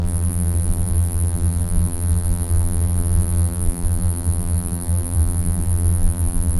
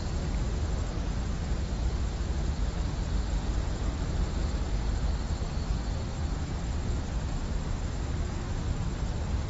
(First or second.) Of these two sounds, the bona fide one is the second